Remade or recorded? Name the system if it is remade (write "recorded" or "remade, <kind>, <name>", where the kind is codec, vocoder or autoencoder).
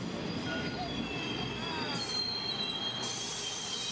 recorded